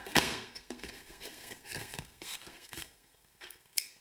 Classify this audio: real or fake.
fake